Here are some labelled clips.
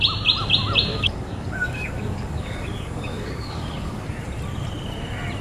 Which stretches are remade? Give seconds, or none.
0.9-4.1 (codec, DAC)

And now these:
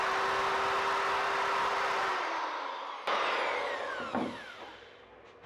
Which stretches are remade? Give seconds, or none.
none

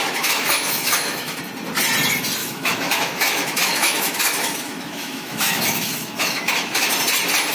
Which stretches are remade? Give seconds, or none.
0.0-1.4 (autoencoder, DAC-VAE); 2.4-6.9

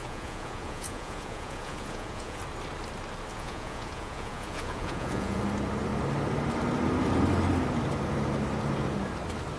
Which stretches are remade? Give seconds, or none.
0.0-2.4 (vocoder, Vocos); 3.3-5.4

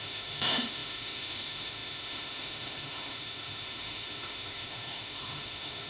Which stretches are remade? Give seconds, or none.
0.0-5.9 (autoencoder, DAC-VAE)